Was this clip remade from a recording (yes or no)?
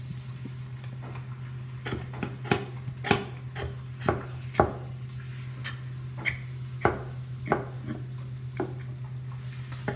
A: no